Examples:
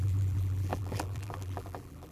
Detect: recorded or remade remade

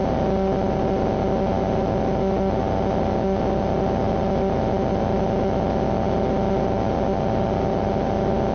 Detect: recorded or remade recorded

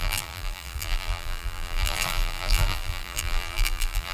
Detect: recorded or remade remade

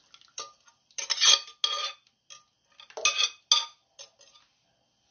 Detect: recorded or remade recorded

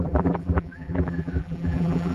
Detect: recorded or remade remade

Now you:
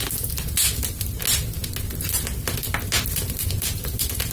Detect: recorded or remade recorded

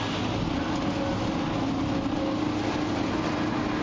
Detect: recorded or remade recorded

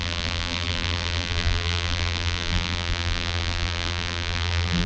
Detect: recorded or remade remade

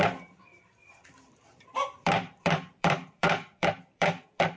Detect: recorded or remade remade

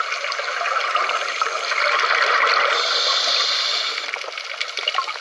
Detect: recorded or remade recorded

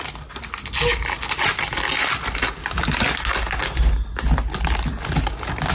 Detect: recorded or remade recorded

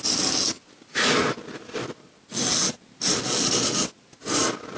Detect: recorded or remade recorded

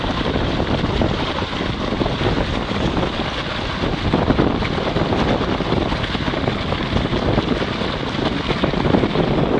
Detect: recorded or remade recorded